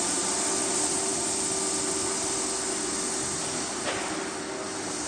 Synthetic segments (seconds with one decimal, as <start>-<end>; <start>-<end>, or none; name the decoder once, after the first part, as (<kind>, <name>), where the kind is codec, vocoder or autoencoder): none